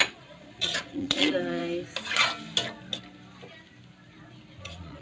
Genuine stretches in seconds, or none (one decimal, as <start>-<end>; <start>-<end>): 1.6-4.6